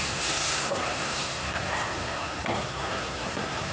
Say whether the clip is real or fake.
fake